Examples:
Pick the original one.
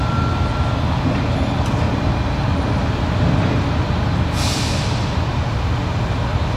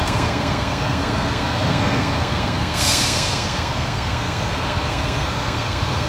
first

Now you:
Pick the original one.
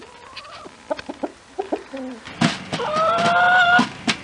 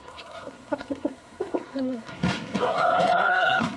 first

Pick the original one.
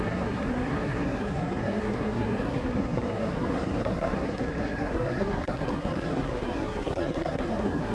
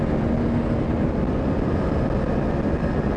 second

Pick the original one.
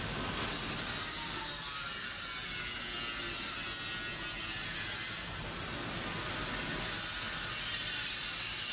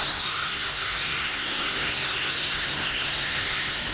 first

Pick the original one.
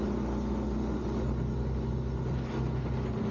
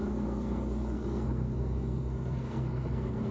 first